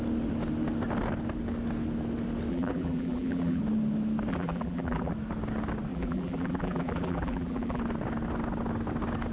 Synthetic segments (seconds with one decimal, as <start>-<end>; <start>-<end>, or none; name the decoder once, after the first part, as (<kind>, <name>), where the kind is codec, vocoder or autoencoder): 2.5-3.6 (vocoder, BigVGAN v2); 4.3-5.1; 5.9-7.8